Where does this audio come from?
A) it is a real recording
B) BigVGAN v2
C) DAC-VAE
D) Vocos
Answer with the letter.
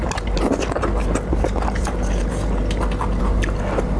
A